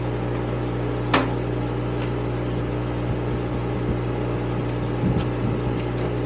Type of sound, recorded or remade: recorded